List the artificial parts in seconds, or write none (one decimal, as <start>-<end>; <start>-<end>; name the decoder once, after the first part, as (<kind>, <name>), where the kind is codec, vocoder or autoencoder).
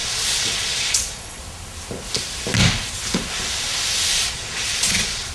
0.0-1.4 (vocoder, Vocos); 4.1-5.3